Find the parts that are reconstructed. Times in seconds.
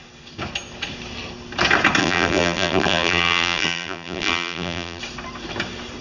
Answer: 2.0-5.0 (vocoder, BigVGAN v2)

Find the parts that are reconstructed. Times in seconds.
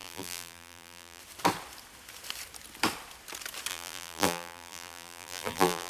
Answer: 0.0-1.2 (vocoder, BigVGAN v2); 3.7-5.9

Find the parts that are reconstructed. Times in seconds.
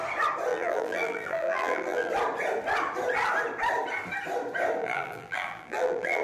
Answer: 0.5-2.1 (vocoder, BigVGAN v2); 4.8-6.2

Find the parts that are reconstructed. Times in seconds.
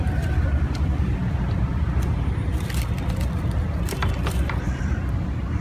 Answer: 0.0-5.6 (vocoder, BigVGAN v2)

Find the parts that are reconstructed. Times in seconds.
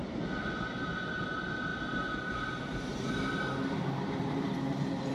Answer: none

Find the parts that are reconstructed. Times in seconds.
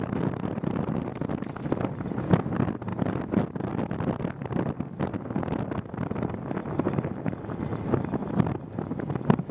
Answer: 0.0-1.1 (vocoder, BigVGAN v2); 2.4-6.6; 8.3-9.5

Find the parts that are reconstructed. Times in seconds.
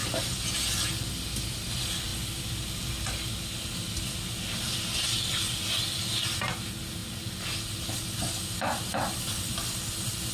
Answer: none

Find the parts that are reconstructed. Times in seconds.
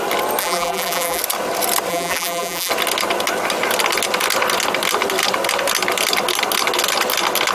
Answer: 0.4-1.2 (vocoder, BigVGAN v2); 1.9-2.7